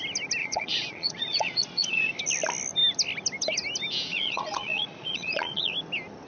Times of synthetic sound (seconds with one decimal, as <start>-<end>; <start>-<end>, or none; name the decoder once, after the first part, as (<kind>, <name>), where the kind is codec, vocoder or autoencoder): 0.4-2.1 (vocoder, Vocos); 4.1-5.7